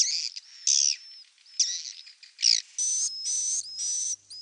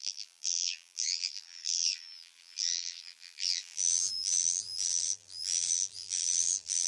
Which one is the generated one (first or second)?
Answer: second